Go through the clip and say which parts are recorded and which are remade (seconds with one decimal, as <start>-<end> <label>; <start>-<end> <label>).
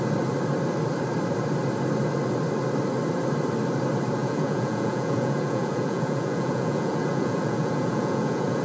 0.0-4.2 recorded; 4.2-8.6 remade